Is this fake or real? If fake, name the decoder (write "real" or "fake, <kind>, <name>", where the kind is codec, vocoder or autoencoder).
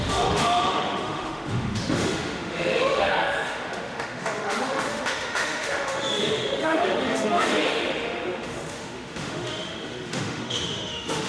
fake, autoencoder, DAC-VAE